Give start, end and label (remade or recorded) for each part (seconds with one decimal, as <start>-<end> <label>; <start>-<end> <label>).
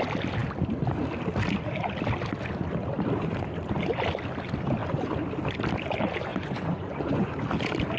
0.0-6.3 recorded; 6.3-7.3 remade; 7.3-8.0 recorded